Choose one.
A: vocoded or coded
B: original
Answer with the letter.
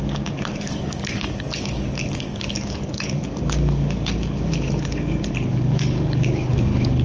A